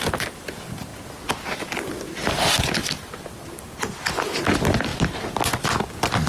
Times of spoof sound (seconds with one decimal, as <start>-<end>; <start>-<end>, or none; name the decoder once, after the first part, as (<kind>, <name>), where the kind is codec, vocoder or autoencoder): 0.0-0.9 (vocoder, BigVGAN v2); 1.9-4.9